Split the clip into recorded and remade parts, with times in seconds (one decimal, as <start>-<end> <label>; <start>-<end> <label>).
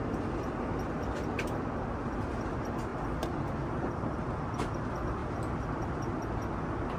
0.0-7.0 recorded